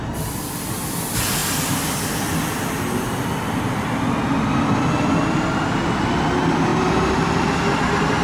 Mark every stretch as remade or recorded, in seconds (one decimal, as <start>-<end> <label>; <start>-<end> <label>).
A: 0.0-8.2 recorded